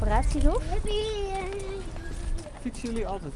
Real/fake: real